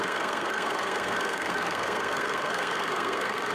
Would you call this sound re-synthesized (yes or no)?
yes